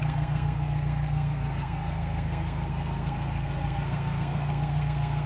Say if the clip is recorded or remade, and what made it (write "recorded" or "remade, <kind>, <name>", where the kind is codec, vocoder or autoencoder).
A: remade, codec, SNAC